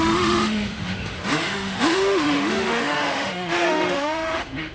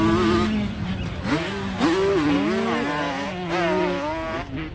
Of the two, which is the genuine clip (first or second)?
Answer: second